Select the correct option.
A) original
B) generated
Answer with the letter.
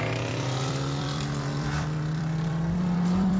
B